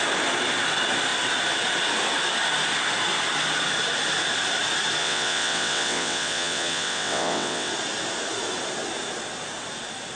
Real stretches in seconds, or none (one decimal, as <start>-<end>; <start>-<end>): 0.0-5.0; 7.7-10.2